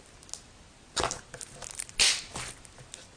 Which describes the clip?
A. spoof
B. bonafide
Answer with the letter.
B